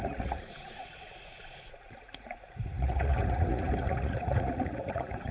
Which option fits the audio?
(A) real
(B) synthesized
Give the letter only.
B